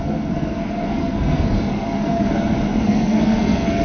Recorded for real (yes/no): no